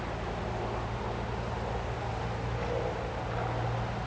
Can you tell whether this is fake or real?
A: real